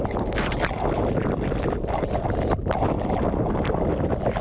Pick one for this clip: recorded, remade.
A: recorded